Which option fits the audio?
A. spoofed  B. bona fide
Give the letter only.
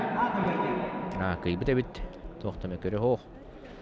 B